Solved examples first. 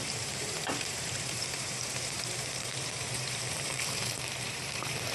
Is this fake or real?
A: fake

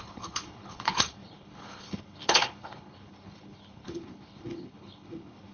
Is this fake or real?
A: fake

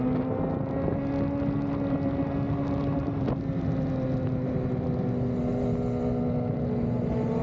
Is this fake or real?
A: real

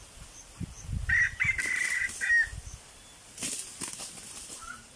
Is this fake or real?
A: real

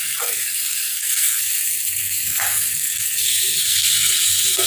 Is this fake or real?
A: fake